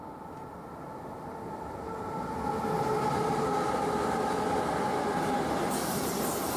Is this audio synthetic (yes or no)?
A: no